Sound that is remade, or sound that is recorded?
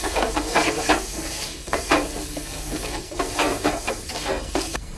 remade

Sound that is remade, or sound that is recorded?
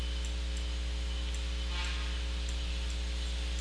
recorded